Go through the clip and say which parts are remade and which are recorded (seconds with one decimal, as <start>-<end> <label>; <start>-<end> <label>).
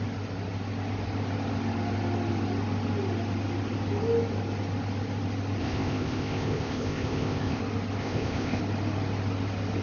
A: 0.0-5.6 recorded; 5.6-7.6 remade; 7.6-8.0 recorded; 8.0-8.6 remade; 8.6-9.8 recorded